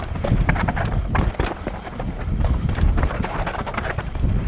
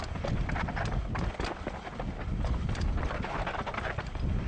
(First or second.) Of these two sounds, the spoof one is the first